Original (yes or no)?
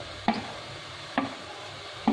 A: no